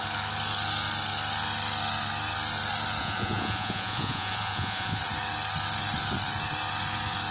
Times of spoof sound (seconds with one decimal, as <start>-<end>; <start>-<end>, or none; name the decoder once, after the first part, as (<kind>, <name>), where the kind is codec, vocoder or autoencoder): 3.0-5.0 (vocoder, Vocos)

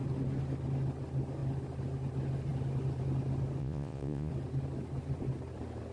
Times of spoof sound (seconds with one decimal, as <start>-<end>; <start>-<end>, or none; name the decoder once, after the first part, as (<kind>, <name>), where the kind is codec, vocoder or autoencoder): 3.6-4.3 (vocoder, Vocos)

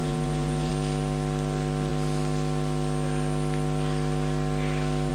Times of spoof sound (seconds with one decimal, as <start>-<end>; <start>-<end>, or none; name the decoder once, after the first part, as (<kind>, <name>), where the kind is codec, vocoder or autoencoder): 0.0-0.7 (vocoder, Vocos)

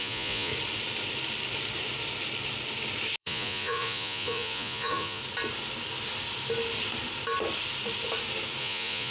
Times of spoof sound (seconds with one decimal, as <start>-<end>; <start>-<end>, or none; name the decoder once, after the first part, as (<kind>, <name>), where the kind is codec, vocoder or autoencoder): 0.0-0.5 (vocoder, Vocos); 3.2-5.2; 8.6-9.1